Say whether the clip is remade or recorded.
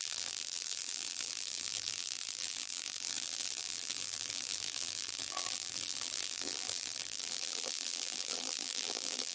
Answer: remade